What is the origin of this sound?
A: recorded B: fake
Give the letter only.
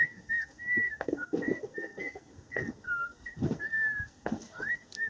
B